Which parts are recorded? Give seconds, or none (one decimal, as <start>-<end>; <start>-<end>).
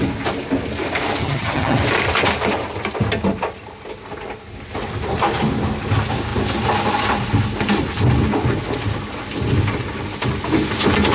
0.0-1.2; 1.8-11.1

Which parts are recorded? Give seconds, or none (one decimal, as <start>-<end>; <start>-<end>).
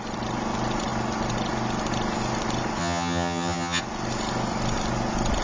0.0-2.8; 3.8-5.4